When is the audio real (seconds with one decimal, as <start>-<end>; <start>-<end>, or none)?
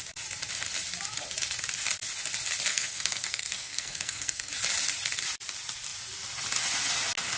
0.0-2.7; 4.5-7.4